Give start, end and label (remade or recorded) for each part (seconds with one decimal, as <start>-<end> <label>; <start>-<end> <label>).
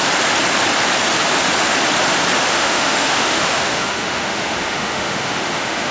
0.0-2.5 recorded; 2.5-5.9 remade